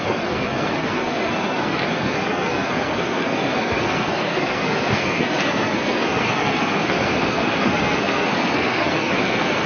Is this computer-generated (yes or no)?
yes